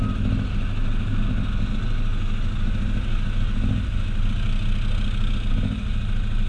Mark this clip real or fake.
real